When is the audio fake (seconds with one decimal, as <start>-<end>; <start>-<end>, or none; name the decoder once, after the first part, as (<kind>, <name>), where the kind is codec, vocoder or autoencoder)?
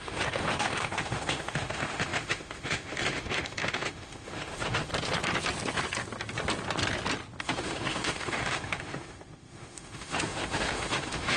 0.0-4.9 (autoencoder, DAC-VAE); 7.4-11.4